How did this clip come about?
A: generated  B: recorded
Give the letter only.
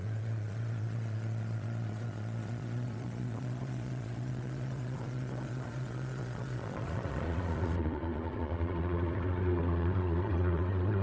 A